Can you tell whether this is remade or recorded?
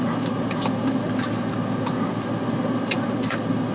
recorded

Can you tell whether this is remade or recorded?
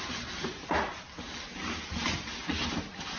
recorded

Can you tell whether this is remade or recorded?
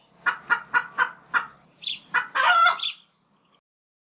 recorded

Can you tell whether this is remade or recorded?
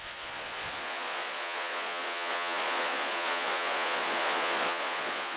remade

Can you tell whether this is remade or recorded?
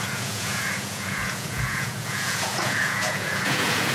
remade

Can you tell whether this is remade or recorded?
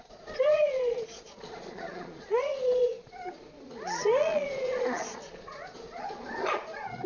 remade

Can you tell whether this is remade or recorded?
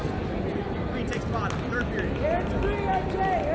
recorded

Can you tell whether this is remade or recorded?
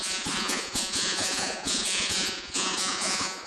remade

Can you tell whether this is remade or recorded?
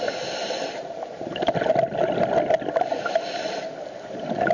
recorded